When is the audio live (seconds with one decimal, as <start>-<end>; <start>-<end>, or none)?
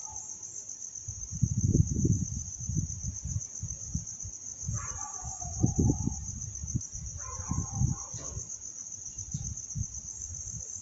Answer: 0.0-4.5; 5.7-8.8; 9.9-10.8